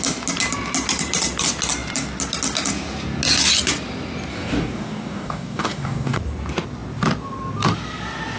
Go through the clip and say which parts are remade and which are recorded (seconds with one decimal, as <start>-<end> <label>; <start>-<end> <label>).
0.0-4.3 recorded; 4.3-6.2 remade; 6.2-8.4 recorded